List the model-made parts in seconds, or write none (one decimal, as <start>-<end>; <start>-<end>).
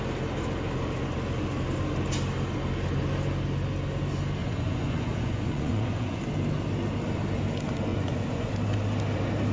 4.4-6.2; 7.9-8.5